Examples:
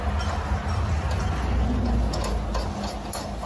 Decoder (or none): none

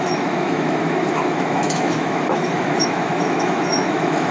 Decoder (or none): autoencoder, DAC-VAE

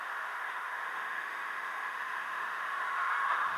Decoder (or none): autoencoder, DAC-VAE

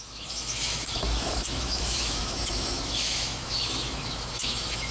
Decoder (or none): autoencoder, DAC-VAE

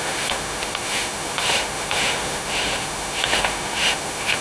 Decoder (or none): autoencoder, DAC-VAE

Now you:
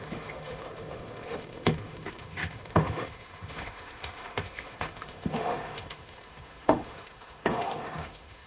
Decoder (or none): autoencoder, DAC-VAE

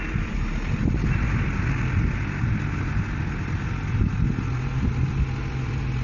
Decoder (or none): none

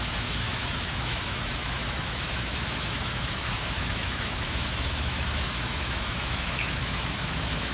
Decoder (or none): autoencoder, DAC-VAE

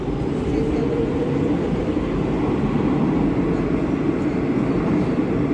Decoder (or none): none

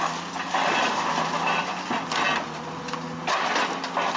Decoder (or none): none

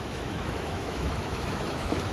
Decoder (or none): autoencoder, DAC-VAE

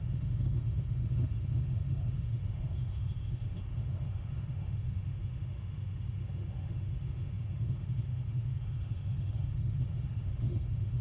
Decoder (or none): autoencoder, DAC-VAE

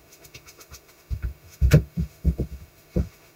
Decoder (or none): autoencoder, DAC-VAE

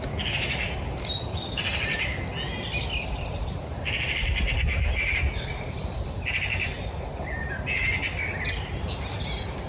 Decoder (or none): none